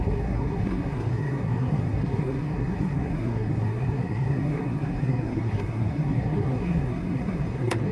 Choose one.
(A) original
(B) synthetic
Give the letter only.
B